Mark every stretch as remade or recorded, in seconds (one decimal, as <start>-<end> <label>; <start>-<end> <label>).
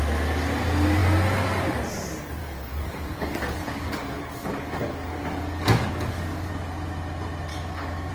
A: 0.0-2.4 recorded; 2.4-6.5 remade; 6.5-7.5 recorded; 7.5-8.1 remade